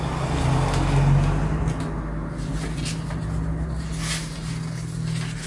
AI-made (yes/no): no